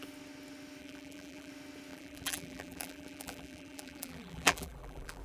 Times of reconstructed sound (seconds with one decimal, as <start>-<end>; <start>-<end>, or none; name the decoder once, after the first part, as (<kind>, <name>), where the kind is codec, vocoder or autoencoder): 0.8-1.5 (vocoder, BigVGAN v2); 1.9-5.2